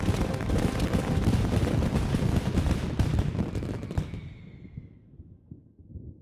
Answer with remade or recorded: recorded